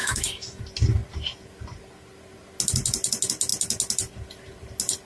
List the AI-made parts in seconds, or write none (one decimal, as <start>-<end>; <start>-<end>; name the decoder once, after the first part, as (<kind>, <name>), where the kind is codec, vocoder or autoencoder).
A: 0.0-0.6 (autoencoder, DAC-VAE)